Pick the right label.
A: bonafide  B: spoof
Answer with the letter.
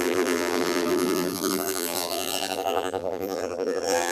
B